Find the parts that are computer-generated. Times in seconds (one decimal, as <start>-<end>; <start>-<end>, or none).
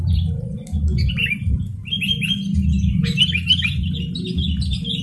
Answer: none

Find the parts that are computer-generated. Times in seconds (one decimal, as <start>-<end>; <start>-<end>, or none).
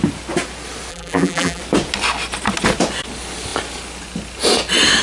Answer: 0.9-1.6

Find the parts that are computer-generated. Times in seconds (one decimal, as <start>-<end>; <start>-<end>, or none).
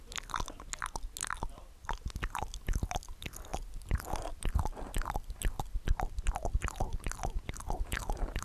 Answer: none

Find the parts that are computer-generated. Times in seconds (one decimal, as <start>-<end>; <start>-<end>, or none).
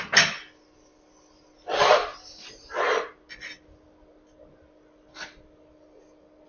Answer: 1.8-3.1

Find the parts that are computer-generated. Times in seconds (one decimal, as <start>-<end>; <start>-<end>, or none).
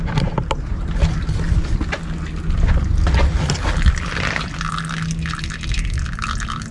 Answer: 0.7-4.7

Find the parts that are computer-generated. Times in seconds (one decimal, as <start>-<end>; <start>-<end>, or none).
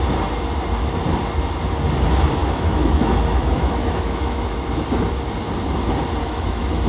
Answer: 2.4-4.8; 6.2-6.9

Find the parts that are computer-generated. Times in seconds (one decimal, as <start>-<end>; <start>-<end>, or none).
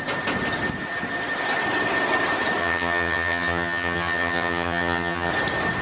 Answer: 2.6-5.3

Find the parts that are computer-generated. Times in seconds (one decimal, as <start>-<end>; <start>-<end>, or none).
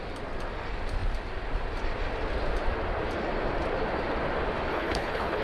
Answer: 4.7-5.4